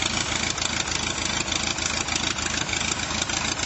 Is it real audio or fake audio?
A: real